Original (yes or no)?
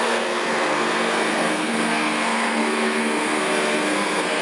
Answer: no